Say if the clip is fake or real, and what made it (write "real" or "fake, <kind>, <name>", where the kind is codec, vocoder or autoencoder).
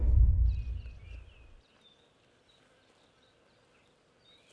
real